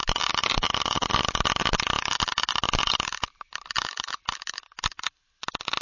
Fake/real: real